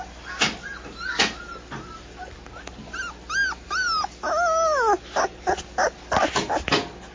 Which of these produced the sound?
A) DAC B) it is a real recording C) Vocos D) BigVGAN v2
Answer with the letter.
B